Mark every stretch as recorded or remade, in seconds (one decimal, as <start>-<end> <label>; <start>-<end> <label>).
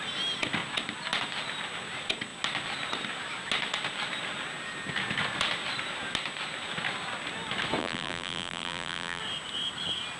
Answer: 0.0-7.8 recorded; 7.8-9.2 remade; 9.2-10.2 recorded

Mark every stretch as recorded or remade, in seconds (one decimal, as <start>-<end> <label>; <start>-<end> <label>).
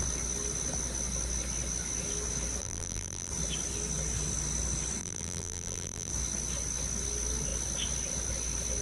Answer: 0.0-2.6 recorded; 2.6-3.3 remade; 3.3-5.0 recorded; 5.0-6.1 remade; 6.1-8.8 recorded